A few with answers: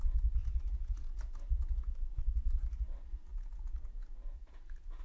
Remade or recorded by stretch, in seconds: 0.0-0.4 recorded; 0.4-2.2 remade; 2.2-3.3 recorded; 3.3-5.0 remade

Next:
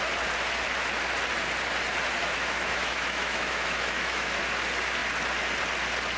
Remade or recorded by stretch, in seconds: 0.0-2.2 recorded; 2.2-4.4 remade; 4.4-6.2 recorded